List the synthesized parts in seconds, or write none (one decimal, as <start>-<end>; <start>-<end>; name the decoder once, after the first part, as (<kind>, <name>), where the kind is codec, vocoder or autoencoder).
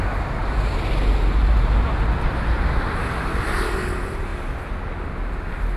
0.4-3.8 (vocoder, BigVGAN v2)